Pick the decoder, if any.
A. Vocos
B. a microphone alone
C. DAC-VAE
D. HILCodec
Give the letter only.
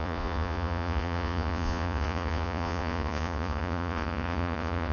A